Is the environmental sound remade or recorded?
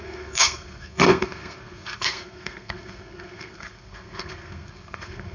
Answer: remade